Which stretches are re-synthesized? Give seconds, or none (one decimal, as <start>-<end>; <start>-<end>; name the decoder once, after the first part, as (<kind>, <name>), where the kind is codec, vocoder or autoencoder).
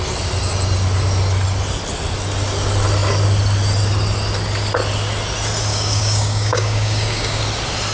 5.7-7.4 (codec, DAC)